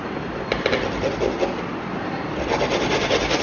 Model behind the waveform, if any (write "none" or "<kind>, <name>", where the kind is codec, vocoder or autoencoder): none